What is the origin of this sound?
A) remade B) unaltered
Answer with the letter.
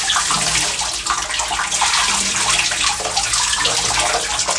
B